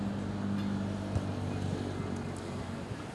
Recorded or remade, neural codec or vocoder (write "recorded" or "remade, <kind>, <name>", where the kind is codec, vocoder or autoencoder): recorded